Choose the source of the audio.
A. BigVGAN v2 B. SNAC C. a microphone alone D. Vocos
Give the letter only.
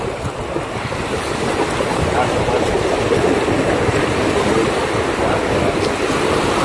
C